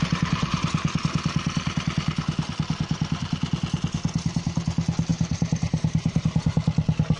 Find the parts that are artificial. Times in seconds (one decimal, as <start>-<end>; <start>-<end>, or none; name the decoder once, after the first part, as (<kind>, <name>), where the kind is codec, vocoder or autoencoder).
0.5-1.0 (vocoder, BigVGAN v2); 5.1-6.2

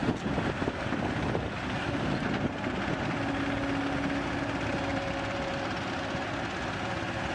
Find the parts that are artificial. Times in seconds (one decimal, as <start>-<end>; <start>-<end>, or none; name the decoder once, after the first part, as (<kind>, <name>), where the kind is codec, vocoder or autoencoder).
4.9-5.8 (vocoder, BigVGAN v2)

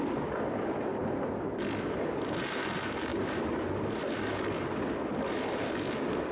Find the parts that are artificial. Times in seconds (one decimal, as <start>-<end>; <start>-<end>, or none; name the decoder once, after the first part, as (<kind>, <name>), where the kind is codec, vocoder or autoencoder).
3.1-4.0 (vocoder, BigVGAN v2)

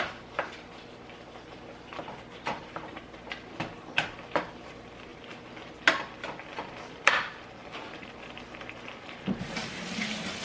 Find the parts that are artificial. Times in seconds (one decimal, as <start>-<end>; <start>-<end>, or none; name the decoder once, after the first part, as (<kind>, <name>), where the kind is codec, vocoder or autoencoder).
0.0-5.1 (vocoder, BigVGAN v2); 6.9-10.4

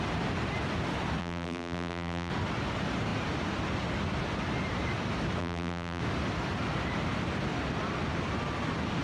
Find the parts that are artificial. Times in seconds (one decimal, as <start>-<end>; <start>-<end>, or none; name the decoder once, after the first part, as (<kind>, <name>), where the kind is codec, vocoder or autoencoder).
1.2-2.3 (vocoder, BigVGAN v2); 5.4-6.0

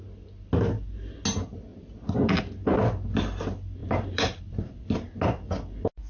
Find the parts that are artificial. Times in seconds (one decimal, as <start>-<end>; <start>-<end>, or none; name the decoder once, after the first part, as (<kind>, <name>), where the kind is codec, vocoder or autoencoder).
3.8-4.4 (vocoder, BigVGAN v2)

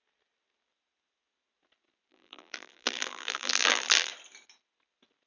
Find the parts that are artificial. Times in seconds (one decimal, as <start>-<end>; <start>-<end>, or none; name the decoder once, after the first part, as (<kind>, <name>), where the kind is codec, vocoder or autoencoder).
2.1-4.1 (vocoder, BigVGAN v2)